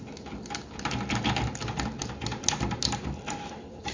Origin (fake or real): real